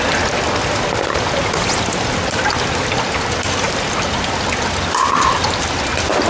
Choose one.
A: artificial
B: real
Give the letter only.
B